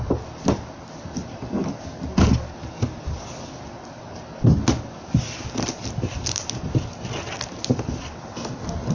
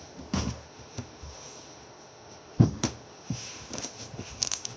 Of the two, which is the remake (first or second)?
second